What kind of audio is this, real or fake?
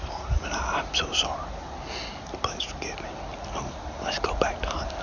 real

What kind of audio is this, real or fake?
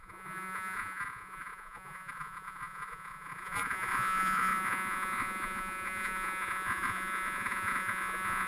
fake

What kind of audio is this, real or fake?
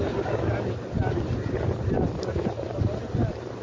real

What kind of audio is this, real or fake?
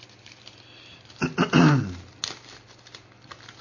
real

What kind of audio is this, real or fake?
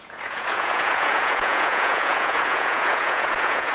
fake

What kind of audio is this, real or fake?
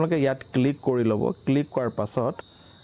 real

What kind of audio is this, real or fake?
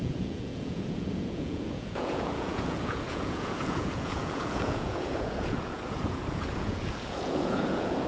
fake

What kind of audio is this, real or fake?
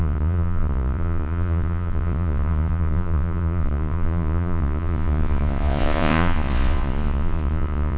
fake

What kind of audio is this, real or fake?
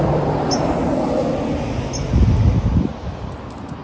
real